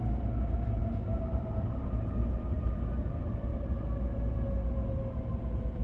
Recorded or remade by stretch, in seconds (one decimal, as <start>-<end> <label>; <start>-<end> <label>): 0.0-0.8 recorded; 0.8-2.8 remade; 2.8-5.8 recorded